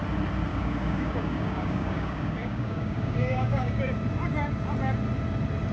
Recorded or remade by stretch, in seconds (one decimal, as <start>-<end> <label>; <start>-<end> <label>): 0.0-0.5 recorded; 0.5-3.8 remade; 3.8-5.7 recorded